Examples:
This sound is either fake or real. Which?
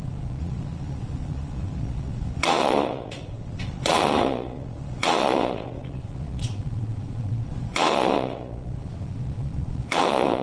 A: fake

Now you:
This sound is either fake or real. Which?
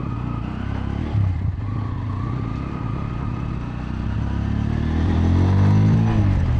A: real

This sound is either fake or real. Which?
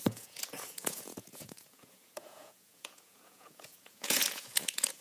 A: fake